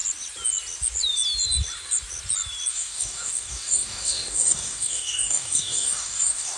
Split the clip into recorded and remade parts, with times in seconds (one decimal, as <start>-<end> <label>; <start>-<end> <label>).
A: 0.0-2.7 recorded; 2.7-6.6 remade